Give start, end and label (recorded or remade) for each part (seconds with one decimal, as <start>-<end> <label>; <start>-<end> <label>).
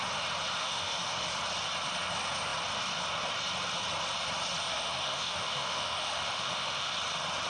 0.0-0.6 recorded; 0.6-1.3 remade; 1.3-4.7 recorded; 4.7-6.9 remade; 6.9-7.5 recorded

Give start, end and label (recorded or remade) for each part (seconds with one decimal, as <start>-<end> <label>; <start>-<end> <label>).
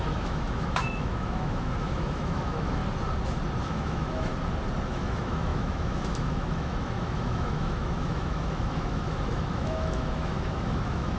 0.0-2.8 remade; 2.8-3.6 recorded; 3.6-4.3 remade; 4.3-4.9 recorded; 4.9-11.2 remade